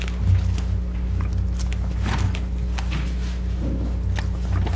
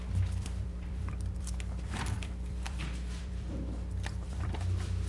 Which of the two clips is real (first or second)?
first